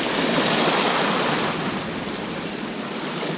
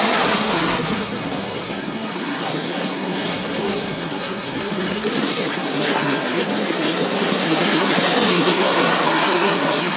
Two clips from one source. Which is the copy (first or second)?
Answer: second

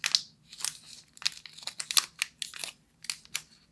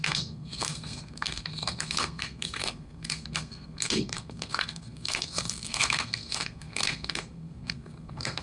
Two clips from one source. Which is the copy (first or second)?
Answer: second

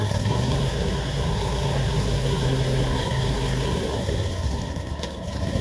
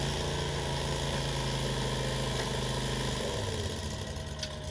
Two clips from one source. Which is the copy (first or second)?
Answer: first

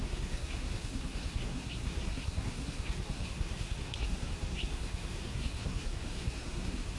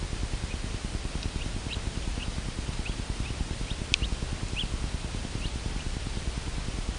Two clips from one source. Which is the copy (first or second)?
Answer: first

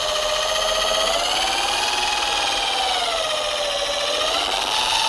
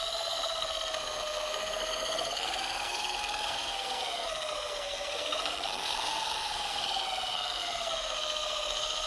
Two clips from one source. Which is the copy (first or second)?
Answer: second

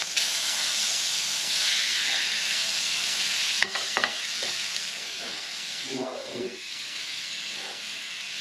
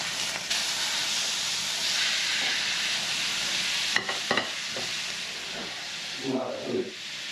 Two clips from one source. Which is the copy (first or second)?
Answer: first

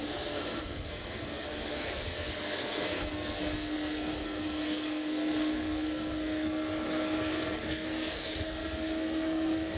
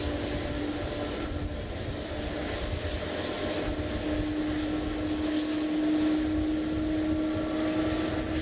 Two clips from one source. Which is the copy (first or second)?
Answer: first